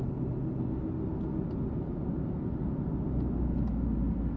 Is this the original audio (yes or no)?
yes